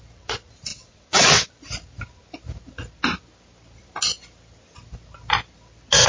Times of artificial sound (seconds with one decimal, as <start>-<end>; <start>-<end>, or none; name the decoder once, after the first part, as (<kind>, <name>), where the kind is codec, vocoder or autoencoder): 0.7-1.5 (vocoder, WaveNeXt)